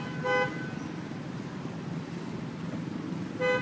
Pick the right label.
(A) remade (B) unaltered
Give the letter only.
B